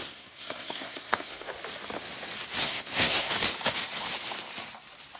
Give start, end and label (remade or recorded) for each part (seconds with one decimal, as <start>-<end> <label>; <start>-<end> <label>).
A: 0.0-1.6 remade; 1.6-2.6 recorded; 2.6-3.3 remade; 3.3-5.2 recorded